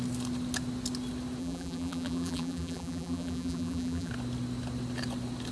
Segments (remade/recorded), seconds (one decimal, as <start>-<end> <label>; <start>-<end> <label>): 0.0-1.4 recorded; 1.4-4.1 remade; 4.1-5.5 recorded